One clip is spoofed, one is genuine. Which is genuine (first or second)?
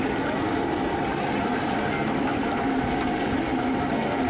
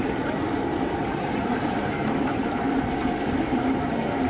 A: first